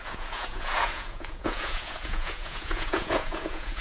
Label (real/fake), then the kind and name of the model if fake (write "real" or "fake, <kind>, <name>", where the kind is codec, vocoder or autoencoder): fake, vocoder, Vocos